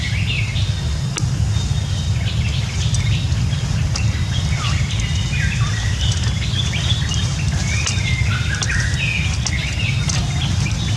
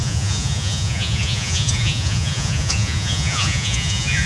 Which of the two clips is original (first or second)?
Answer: first